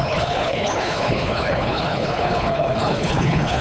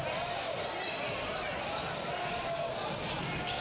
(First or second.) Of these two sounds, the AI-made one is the first